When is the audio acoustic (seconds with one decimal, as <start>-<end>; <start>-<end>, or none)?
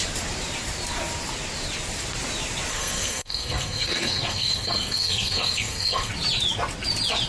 0.0-2.7; 6.1-7.3